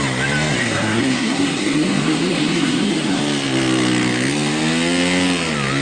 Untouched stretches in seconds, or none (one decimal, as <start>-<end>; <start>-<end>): 0.0-0.6; 3.2-5.8